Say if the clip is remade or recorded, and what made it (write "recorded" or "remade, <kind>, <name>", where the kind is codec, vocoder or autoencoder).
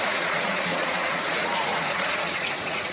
remade, vocoder, Vocos